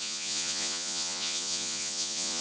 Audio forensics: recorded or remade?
remade